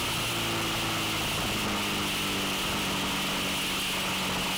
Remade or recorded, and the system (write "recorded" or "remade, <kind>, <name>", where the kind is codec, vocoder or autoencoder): recorded